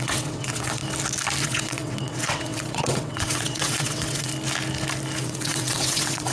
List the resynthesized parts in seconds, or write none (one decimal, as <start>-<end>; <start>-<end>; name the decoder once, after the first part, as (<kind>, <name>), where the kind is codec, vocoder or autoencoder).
0.0-0.8 (vocoder, WaveNeXt); 1.4-4.3; 5.2-6.3